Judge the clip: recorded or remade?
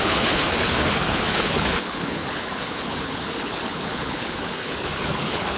remade